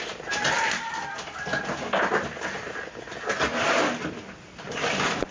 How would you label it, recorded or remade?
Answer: recorded